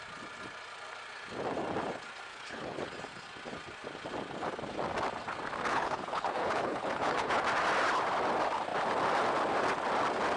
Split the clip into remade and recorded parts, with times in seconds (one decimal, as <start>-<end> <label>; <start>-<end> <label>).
0.0-2.3 recorded; 2.3-2.9 remade; 2.9-5.7 recorded; 5.7-7.4 remade; 7.4-10.4 recorded